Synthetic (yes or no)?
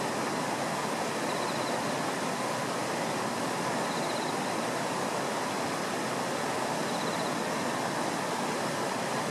no